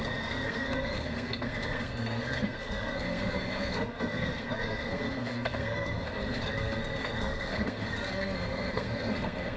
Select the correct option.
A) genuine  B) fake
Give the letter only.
B